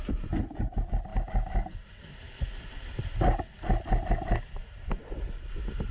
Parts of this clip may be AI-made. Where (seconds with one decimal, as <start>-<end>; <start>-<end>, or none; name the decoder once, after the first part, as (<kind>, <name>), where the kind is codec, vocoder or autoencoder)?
none